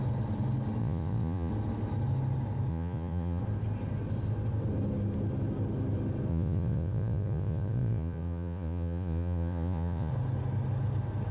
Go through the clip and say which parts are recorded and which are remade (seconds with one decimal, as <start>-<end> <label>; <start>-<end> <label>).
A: 0.0-0.8 recorded; 0.8-1.5 remade; 1.5-2.7 recorded; 2.7-3.4 remade; 3.4-6.3 recorded; 6.3-10.1 remade; 10.1-11.3 recorded